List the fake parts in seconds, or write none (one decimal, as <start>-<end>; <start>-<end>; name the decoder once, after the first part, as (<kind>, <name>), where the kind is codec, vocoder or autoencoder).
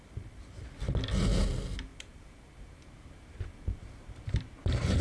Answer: 1.9-5.0 (vocoder, BigVGAN v2)